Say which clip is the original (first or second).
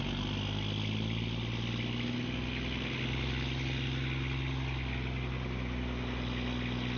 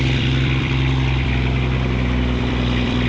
first